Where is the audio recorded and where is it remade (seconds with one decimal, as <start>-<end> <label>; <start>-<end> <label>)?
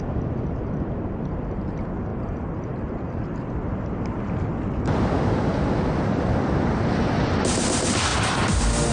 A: 0.0-8.9 recorded